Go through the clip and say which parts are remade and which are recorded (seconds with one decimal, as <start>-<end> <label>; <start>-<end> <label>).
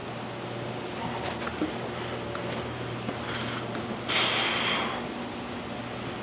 0.0-6.2 recorded